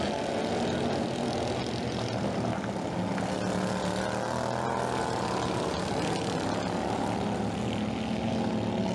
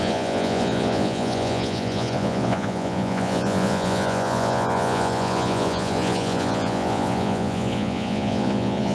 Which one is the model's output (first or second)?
second